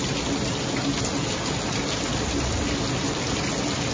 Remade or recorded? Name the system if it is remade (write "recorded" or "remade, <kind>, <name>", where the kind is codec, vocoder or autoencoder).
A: recorded